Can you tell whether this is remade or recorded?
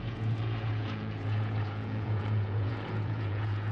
remade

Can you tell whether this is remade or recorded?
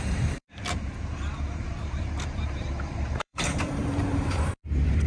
remade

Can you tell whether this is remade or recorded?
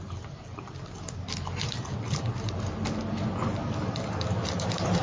recorded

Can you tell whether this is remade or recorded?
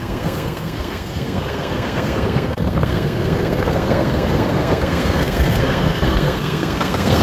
remade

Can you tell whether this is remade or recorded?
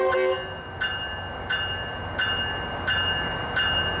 recorded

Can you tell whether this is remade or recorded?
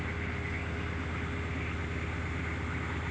recorded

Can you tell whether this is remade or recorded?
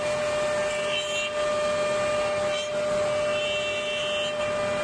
recorded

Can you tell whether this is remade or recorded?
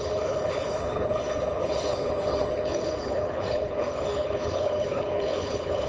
remade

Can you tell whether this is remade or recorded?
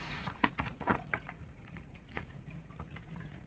remade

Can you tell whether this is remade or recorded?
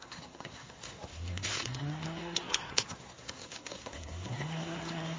remade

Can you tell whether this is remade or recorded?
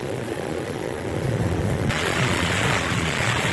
remade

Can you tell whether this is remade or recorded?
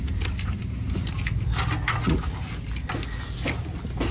recorded